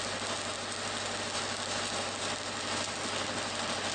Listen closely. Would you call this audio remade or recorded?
recorded